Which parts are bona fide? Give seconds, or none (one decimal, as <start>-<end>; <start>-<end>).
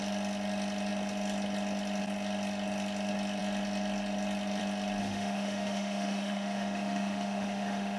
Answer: 0.0-5.0